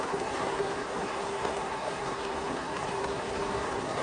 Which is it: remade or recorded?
remade